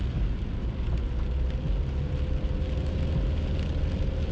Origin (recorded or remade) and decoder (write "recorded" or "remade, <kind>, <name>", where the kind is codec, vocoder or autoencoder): recorded